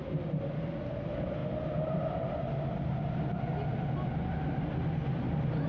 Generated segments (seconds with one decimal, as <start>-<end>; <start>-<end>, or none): none